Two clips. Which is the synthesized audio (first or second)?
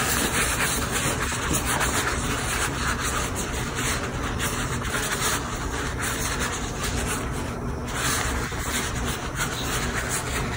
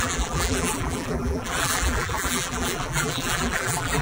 second